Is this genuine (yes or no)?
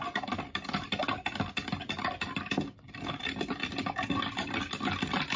yes